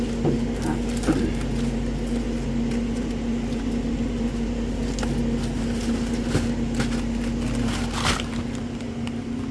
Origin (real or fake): real